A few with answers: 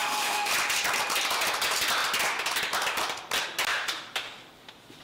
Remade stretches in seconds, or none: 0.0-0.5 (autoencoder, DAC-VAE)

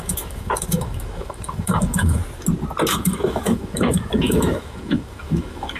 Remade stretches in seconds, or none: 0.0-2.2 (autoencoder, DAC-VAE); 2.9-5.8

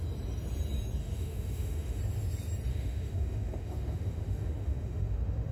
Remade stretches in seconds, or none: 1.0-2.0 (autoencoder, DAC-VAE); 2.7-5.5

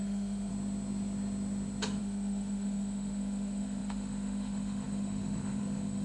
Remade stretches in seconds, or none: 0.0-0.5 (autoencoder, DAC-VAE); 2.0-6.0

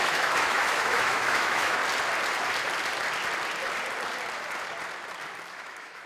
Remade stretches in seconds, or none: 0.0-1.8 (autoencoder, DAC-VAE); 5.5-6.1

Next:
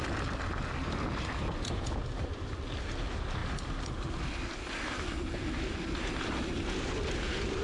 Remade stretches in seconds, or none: none

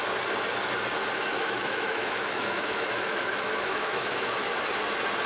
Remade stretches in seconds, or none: 1.3-4.5 (autoencoder, DAC-VAE)